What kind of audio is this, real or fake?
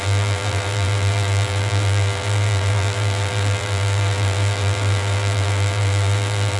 fake